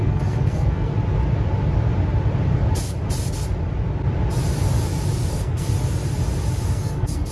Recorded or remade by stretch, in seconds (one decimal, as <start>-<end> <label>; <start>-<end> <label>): 0.0-0.9 remade; 0.9-5.3 recorded; 5.3-5.7 remade; 5.7-6.7 recorded; 6.7-7.3 remade